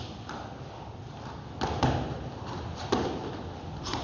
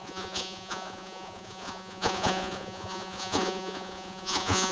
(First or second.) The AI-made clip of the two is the second